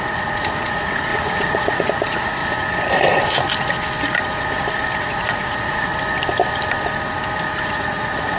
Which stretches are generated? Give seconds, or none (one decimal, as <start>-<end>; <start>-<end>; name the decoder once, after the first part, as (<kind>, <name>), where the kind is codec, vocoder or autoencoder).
0.0-2.4 (vocoder, Vocos); 5.0-5.9; 7.6-8.4

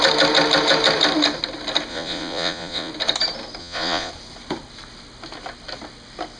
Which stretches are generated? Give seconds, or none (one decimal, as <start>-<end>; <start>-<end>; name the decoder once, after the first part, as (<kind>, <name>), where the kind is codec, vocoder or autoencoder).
1.9-2.9 (vocoder, Vocos); 3.6-4.1

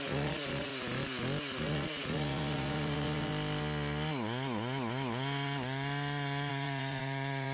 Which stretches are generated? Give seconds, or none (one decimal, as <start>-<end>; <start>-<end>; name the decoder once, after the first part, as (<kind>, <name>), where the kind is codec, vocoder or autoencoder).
0.0-0.7 (vocoder, Vocos); 1.6-3.3; 6.5-7.5